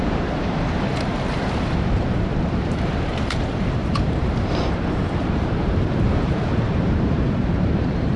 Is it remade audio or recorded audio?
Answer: remade